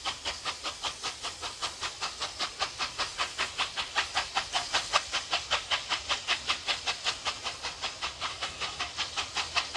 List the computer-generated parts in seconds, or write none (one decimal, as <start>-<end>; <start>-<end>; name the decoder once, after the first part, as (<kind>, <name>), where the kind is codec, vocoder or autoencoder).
8.3-8.8 (codec, SNAC)